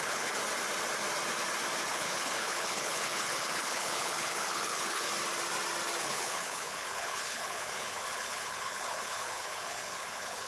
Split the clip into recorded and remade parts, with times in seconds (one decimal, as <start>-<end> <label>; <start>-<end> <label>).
0.0-0.4 remade; 0.4-1.9 recorded; 1.9-5.1 remade; 5.1-6.0 recorded; 6.0-10.5 remade